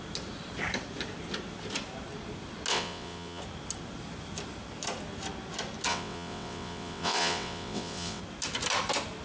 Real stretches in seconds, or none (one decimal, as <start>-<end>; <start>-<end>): 0.0-2.7; 3.4-5.9; 8.2-9.2